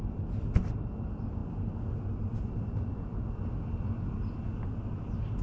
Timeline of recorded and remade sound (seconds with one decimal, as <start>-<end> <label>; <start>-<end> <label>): 0.0-5.4 recorded